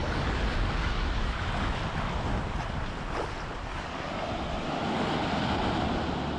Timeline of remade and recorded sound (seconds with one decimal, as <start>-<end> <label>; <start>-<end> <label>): 0.0-1.4 remade; 1.4-3.7 recorded; 3.7-4.3 remade; 4.3-6.4 recorded